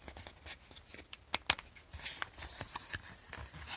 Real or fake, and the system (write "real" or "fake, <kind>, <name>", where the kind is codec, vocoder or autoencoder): real